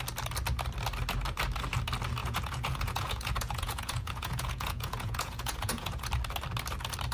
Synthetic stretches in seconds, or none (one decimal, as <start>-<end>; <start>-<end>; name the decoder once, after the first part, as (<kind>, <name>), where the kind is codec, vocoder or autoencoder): 2.2-6.1 (vocoder, Vocos)